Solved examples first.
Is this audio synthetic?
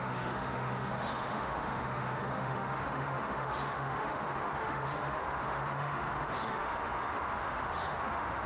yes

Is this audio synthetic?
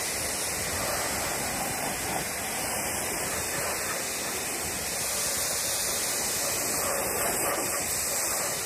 no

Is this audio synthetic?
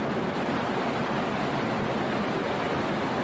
no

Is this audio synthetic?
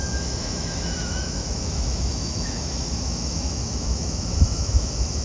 yes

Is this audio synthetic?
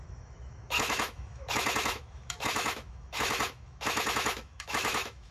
yes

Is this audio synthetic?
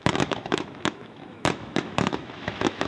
yes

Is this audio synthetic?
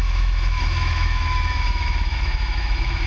yes